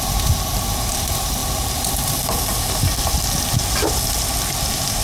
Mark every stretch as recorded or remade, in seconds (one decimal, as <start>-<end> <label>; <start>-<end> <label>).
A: 0.0-5.0 recorded